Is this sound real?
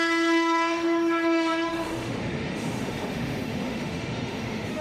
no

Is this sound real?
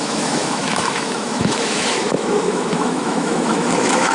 no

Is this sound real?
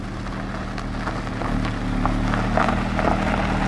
yes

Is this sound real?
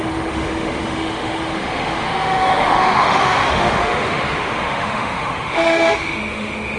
no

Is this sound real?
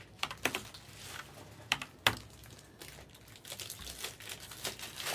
yes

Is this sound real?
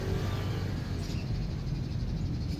yes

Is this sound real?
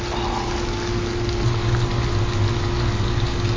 yes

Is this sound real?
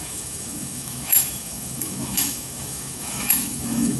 no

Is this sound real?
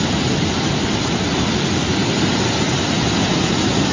yes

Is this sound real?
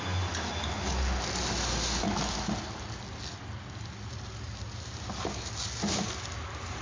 yes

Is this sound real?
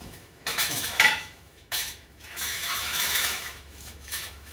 no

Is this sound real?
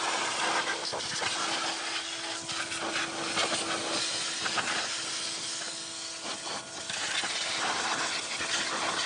yes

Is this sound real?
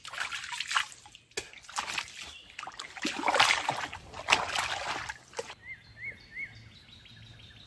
yes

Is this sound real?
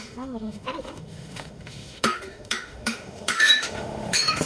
no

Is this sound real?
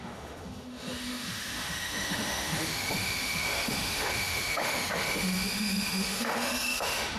no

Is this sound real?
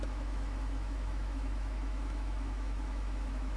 no